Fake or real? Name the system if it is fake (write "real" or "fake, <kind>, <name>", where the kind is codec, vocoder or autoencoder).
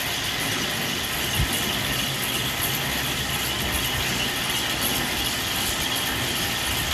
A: real